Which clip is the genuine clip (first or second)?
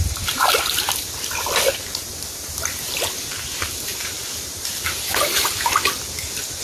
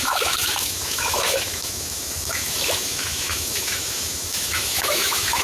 first